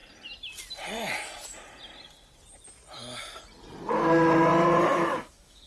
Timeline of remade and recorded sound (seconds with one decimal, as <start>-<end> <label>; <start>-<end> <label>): 0.0-4.9 recorded; 4.9-5.7 remade